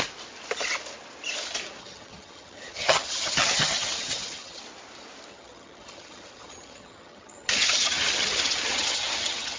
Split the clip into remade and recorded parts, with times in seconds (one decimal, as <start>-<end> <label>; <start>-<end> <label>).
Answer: 0.0-1.8 recorded; 1.8-4.6 remade; 4.6-5.3 recorded; 5.3-9.6 remade